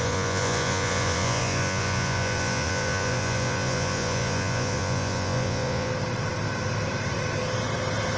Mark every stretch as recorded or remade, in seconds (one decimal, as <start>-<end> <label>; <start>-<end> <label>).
0.0-5.9 remade; 5.9-8.2 recorded